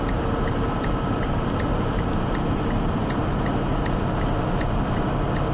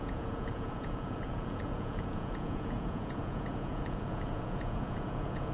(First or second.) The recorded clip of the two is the first